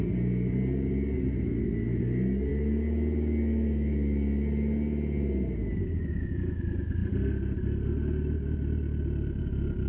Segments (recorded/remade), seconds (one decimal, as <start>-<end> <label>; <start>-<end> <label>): 0.0-9.9 recorded